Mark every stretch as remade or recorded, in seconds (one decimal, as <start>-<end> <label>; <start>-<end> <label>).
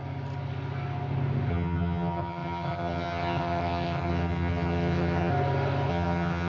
0.0-1.5 recorded; 1.5-5.3 remade; 5.3-5.9 recorded; 5.9-6.5 remade